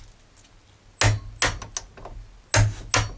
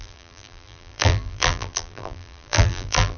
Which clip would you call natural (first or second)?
first